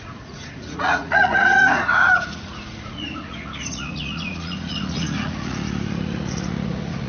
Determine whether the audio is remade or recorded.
remade